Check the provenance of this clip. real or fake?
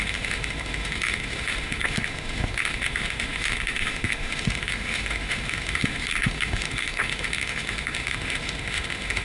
fake